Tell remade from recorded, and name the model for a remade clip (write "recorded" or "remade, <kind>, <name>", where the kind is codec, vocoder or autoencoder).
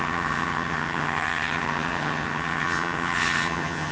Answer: remade, vocoder, HiFi-GAN